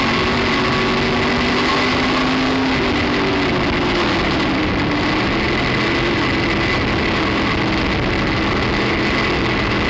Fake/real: real